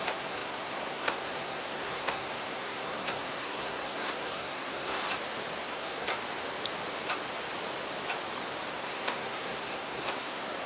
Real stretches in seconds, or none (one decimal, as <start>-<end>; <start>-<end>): 5.0-5.6; 6.1-8.7